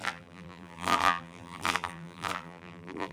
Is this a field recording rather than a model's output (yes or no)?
no